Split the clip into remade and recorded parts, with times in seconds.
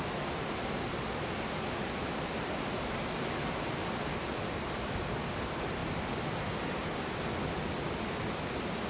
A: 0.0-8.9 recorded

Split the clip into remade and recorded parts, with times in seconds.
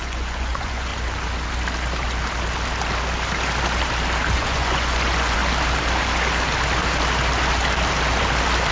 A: 0.0-0.9 remade; 0.9-4.3 recorded; 4.3-5.4 remade; 5.4-8.7 recorded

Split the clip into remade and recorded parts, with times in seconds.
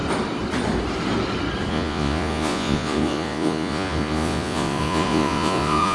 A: 0.0-1.7 recorded; 1.7-5.9 remade